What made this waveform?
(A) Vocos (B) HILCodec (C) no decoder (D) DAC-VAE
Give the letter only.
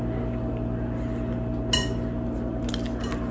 C